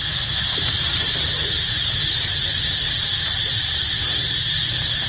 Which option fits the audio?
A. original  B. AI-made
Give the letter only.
A